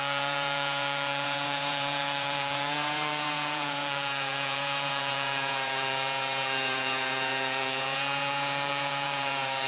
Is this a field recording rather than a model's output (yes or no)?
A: no